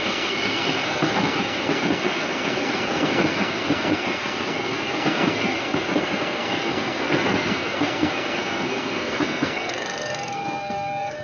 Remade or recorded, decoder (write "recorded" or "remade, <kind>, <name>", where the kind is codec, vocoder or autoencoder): remade, codec, SNAC